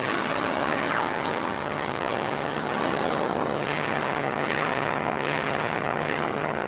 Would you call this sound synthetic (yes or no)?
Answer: yes